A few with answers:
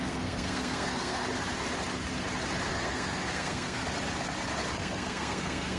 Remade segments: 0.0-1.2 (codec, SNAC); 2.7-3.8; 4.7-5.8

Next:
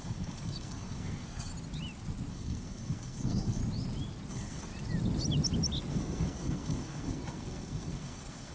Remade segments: 0.0-1.5 (codec, SNAC); 2.3-3.6; 4.3-4.7; 5.9-8.5